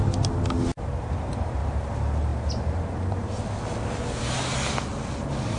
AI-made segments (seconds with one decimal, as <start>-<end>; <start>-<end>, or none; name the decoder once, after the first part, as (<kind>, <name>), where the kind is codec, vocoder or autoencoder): 0.7-1.9 (vocoder, BigVGAN v2); 2.3-3.4